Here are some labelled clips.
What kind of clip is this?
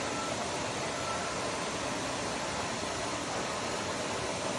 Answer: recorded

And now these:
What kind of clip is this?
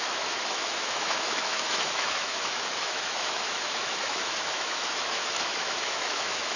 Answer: remade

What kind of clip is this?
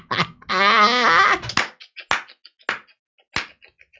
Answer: recorded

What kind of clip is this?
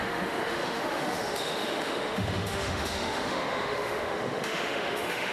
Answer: remade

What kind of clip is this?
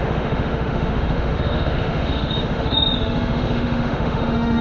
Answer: remade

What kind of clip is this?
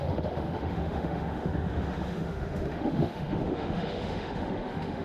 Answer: remade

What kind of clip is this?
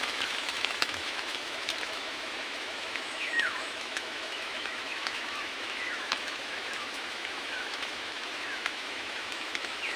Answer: remade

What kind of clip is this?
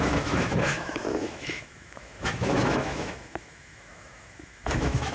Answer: remade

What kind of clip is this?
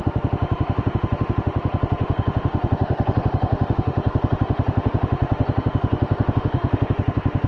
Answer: remade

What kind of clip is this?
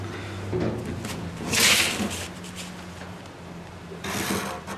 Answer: recorded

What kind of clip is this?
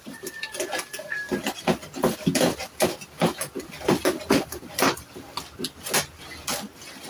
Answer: recorded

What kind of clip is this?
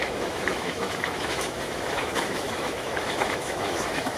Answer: remade